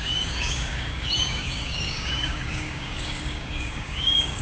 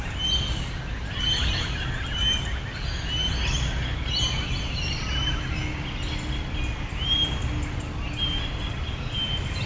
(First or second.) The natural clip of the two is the second